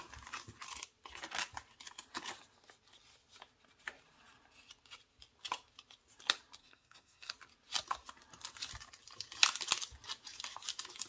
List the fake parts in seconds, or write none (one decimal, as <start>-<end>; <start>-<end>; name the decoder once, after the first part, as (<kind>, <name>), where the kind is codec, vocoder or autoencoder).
6.6-7.3 (codec, SNAC)